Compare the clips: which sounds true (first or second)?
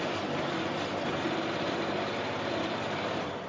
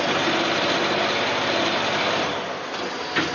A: second